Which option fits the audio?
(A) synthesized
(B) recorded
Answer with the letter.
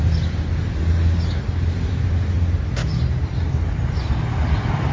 B